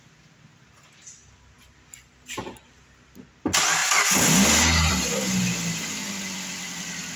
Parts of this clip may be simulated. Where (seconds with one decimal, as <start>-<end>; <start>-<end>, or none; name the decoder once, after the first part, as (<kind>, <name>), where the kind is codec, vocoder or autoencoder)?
none